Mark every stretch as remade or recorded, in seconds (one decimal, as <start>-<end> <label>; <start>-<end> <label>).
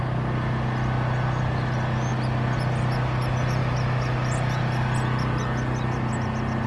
0.0-6.7 recorded